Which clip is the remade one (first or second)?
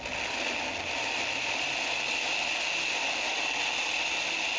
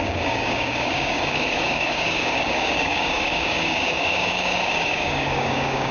second